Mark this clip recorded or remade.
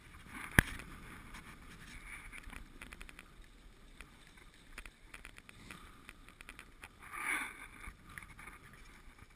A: recorded